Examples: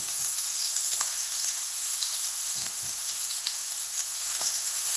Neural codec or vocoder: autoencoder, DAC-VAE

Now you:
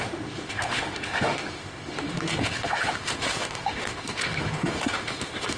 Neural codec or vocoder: autoencoder, DAC-VAE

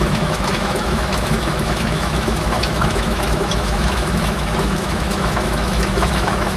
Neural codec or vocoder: autoencoder, DAC-VAE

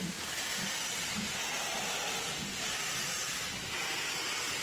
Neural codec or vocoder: none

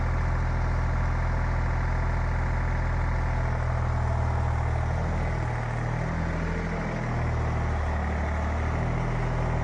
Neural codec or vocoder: none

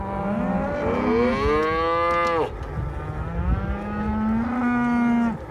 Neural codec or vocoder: none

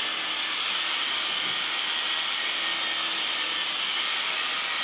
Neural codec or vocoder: none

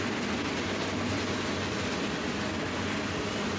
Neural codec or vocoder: none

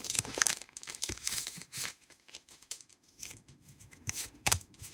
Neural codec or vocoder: autoencoder, DAC-VAE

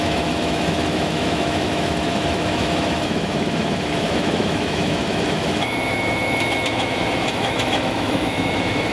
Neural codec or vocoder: autoencoder, DAC-VAE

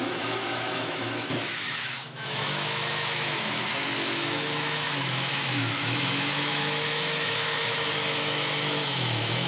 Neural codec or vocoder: autoencoder, DAC-VAE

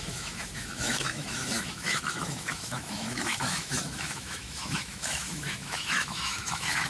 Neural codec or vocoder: autoencoder, DAC-VAE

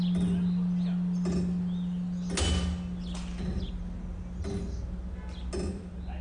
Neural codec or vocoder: none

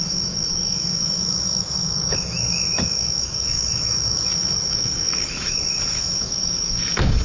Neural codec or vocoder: autoencoder, DAC-VAE